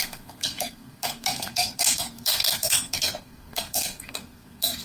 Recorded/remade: remade